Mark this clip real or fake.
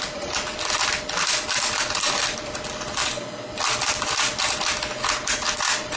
fake